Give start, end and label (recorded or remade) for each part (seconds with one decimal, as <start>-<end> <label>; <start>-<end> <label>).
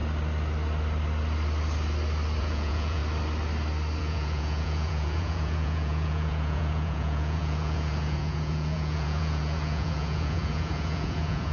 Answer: 0.0-2.4 recorded; 2.4-3.0 remade; 3.0-4.0 recorded; 4.0-11.5 remade